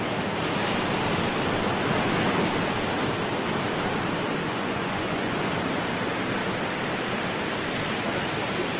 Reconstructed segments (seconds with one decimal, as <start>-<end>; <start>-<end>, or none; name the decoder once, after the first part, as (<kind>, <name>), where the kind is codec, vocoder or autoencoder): 4.4-5.5 (vocoder, Vocos)